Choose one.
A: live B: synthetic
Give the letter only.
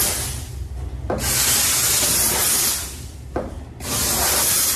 A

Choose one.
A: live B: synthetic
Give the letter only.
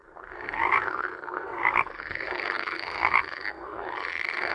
B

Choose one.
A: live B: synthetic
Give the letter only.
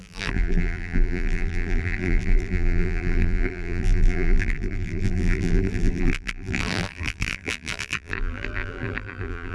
B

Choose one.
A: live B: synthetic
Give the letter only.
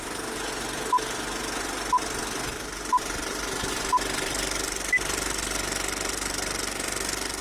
A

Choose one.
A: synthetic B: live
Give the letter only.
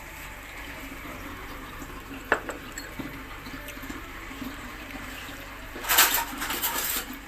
A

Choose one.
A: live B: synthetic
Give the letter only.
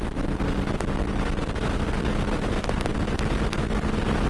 A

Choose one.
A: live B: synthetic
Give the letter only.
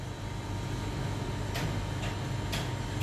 A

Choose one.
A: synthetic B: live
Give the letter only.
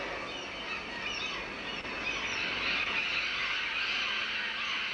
B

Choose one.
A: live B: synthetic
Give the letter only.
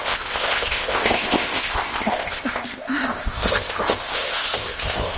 B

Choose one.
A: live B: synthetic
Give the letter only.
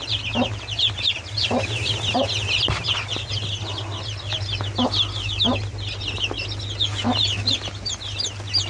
A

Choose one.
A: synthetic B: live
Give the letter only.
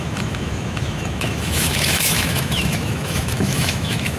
A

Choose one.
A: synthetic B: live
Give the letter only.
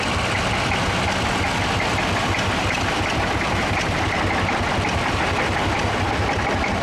B